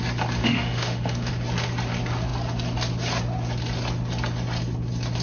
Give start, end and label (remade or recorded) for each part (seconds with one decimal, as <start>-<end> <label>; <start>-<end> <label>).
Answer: 0.0-0.4 recorded; 0.4-1.3 remade; 1.3-5.2 recorded